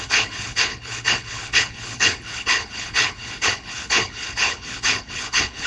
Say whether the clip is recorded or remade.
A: remade